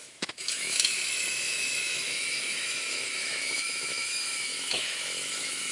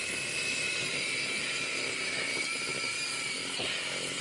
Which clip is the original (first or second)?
second